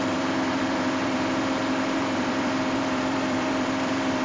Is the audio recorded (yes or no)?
no